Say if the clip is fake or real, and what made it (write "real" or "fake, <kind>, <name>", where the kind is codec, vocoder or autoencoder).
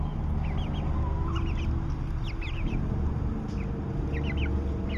real